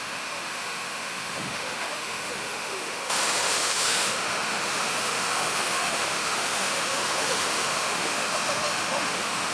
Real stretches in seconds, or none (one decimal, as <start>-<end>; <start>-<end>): none